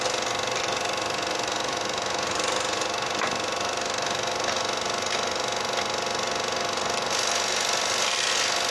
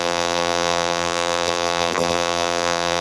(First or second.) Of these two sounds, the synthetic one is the second